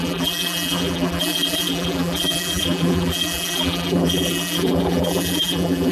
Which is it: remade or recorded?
remade